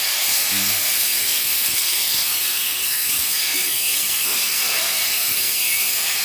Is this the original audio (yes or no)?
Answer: no